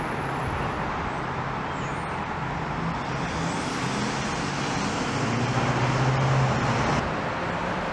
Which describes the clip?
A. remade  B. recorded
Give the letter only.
B